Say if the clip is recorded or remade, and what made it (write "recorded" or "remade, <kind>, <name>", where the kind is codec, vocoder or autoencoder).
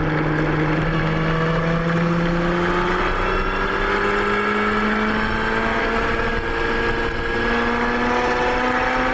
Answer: recorded